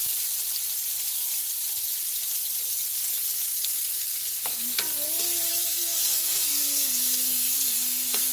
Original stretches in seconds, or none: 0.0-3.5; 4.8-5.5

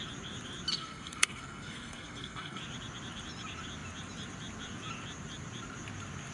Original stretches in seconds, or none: 0.0-0.7; 2.6-6.3

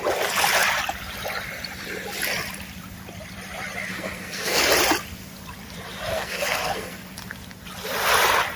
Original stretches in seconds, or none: 0.0-3.9; 4.6-6.1; 7.0-8.6